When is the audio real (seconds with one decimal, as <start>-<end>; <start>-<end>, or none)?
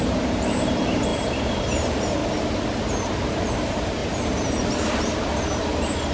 2.2-3.1